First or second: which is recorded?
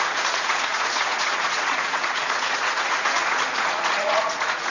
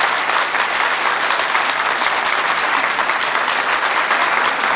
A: second